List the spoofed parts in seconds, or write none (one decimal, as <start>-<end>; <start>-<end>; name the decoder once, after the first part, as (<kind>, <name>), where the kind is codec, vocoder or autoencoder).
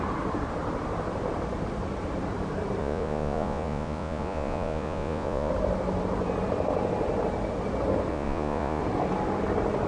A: 2.8-5.5 (vocoder, Vocos); 8.1-8.8